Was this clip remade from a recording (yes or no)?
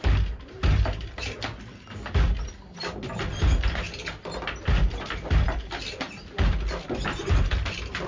no